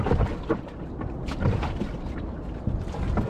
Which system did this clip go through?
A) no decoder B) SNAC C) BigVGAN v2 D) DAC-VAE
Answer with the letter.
A